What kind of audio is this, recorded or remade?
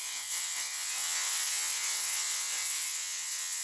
remade